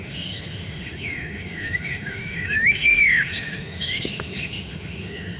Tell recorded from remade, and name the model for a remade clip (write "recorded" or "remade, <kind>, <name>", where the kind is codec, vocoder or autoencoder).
remade, autoencoder, DAC-VAE